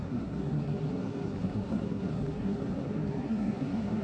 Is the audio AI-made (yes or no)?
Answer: yes